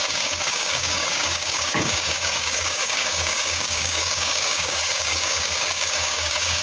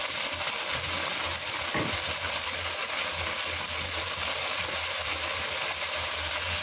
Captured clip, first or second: second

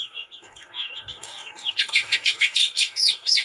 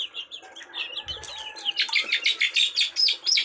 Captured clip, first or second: second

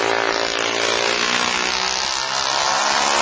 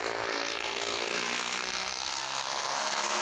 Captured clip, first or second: first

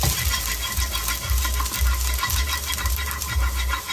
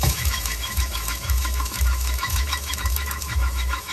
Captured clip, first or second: first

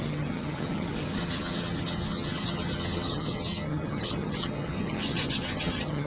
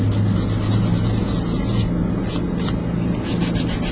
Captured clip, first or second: second